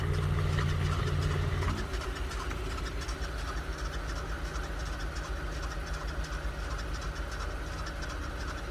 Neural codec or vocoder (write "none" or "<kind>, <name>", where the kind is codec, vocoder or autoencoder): none